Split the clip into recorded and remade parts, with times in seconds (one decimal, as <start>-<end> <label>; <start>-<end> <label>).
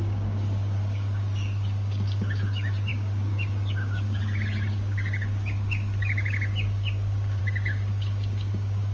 0.0-8.9 remade